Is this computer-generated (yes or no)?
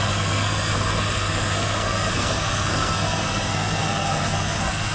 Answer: yes